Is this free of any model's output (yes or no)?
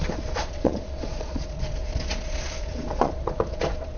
no